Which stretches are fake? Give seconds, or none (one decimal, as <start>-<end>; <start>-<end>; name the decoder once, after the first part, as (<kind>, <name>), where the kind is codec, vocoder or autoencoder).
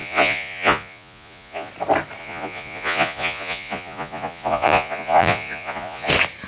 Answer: 0.0-1.7 (vocoder, Vocos); 2.2-6.1